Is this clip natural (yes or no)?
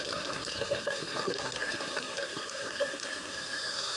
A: no